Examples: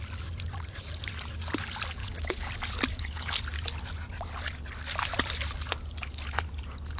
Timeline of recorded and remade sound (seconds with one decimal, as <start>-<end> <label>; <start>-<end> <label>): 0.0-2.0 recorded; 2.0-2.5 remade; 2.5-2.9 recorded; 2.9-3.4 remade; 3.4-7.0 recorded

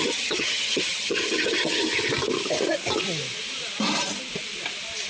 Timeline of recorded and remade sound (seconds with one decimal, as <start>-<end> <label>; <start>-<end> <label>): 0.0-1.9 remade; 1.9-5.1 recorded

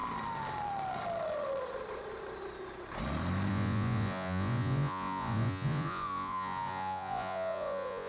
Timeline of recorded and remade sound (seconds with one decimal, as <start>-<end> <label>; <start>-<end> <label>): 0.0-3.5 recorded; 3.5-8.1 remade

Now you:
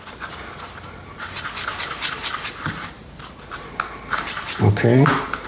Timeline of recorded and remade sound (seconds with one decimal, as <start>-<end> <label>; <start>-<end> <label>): 0.0-4.4 recorded; 4.4-5.5 remade

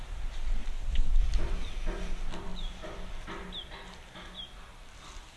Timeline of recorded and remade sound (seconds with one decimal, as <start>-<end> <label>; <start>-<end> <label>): 0.0-5.4 recorded

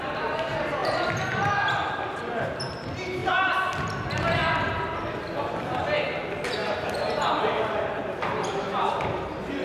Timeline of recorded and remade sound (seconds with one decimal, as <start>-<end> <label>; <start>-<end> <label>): 0.0-6.6 recorded; 6.6-9.2 remade; 9.2-9.6 recorded